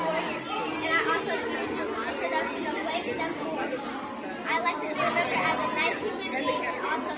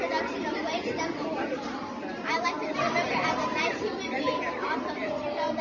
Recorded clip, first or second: first